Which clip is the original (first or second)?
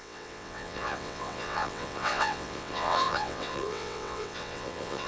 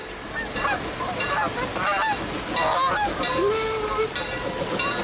second